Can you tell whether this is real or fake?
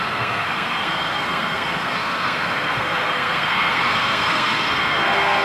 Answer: fake